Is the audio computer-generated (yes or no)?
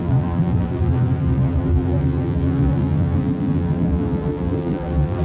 yes